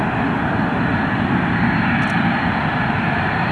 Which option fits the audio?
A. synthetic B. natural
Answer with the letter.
B